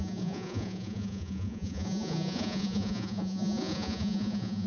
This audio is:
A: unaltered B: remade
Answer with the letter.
B